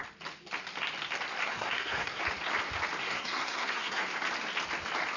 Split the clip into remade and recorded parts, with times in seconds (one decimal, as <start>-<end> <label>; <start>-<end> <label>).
0.0-1.4 recorded; 1.4-2.2 remade; 2.2-3.0 recorded; 3.0-4.0 remade; 4.0-5.2 recorded